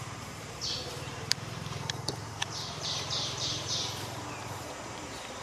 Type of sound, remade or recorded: remade